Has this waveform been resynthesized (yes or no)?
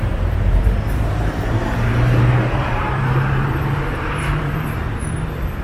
yes